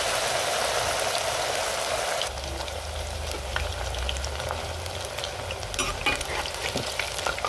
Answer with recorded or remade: recorded